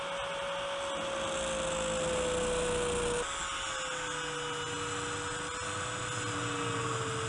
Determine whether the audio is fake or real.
real